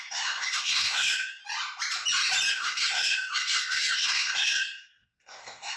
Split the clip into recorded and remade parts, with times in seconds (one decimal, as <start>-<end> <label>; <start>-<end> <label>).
0.0-1.4 remade; 1.4-2.5 recorded; 2.5-5.8 remade

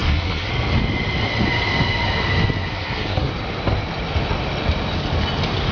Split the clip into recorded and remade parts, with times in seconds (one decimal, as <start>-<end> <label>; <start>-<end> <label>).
0.0-0.5 remade; 0.5-2.7 recorded; 2.7-3.3 remade; 3.3-5.7 recorded

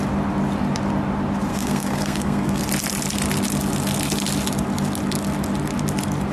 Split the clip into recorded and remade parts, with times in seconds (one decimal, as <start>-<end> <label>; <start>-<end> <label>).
0.0-1.5 recorded; 1.5-2.6 remade; 2.6-6.3 recorded